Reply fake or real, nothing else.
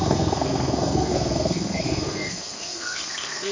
fake